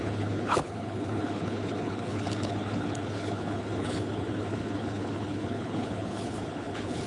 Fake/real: fake